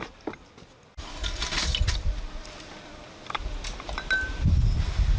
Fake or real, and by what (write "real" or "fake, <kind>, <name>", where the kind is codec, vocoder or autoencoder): real